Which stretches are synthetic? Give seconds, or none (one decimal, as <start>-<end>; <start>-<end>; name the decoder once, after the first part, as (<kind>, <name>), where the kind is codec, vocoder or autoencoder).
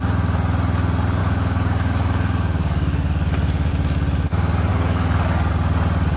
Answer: 1.2-3.7 (codec, DAC); 4.7-5.5